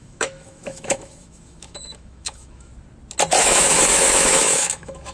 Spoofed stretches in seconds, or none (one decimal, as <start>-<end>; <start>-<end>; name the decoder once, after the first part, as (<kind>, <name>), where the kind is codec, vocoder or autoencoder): 0.0-2.7 (autoencoder, DAC-VAE); 3.4-5.1